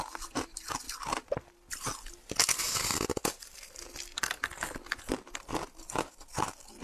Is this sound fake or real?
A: real